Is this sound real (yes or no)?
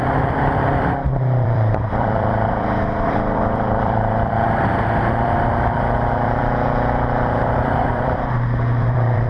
no